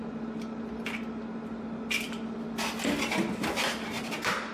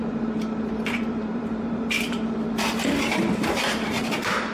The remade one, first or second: second